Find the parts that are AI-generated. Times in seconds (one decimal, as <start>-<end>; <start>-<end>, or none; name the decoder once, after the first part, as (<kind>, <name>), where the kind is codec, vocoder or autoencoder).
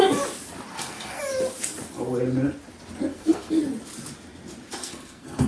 0.7-1.2 (codec, SNAC); 3.1-3.6; 4.8-5.5